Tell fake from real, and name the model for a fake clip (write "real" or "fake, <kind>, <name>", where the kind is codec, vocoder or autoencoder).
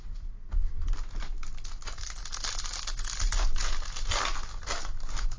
real